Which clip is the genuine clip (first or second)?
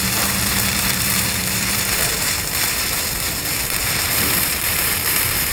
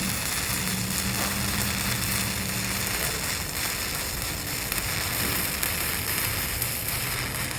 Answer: second